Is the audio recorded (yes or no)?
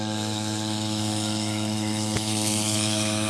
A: no